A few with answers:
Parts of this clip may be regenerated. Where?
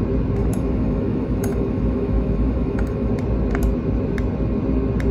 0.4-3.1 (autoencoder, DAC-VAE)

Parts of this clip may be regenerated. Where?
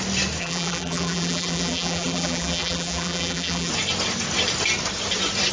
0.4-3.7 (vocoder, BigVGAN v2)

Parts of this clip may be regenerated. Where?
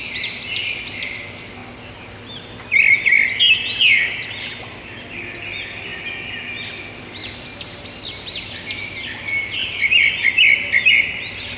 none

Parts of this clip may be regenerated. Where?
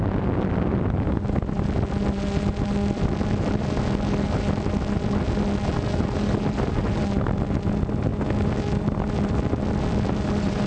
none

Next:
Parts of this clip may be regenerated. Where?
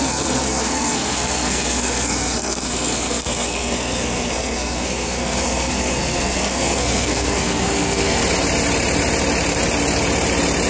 0.0-8.2 (codec, SNAC)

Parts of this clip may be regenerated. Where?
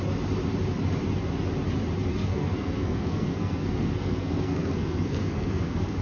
2.1-6.0 (codec, SNAC)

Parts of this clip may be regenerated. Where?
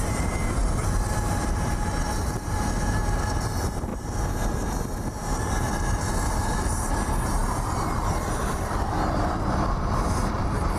0.6-1.7 (vocoder, BigVGAN v2); 7.4-10.8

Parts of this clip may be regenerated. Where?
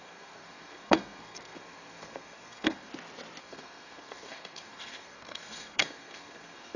0.0-2.9 (codec, SNAC); 3.4-6.8